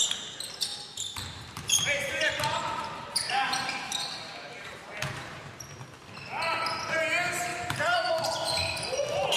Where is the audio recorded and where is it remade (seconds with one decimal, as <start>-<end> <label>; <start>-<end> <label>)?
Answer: 0.0-0.7 recorded; 0.7-5.1 remade; 5.1-7.5 recorded; 7.5-8.1 remade; 8.1-9.4 recorded